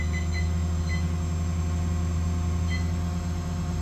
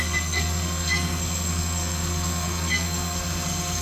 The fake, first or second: second